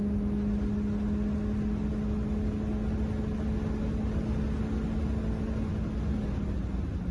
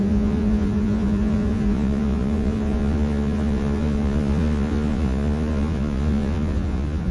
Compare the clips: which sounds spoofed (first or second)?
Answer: second